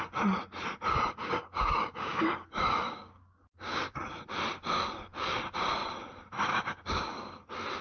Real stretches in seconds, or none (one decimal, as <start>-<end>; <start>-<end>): 0.0-1.2; 4.0-6.5; 7.3-7.8